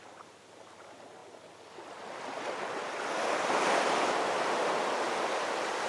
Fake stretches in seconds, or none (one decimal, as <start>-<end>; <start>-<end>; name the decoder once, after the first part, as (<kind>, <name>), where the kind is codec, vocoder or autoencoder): none